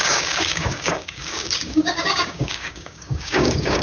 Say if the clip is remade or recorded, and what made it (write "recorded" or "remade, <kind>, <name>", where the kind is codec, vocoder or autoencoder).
remade, codec, DAC